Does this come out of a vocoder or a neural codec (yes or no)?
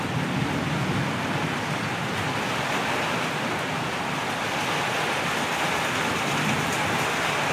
no